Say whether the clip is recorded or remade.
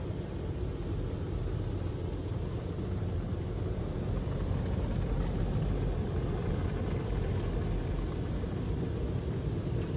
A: recorded